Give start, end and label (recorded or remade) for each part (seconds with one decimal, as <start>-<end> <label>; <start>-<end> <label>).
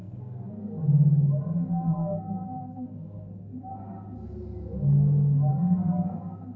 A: 0.0-0.8 remade; 0.8-1.6 recorded; 1.6-3.7 remade; 3.7-5.5 recorded; 5.5-6.6 remade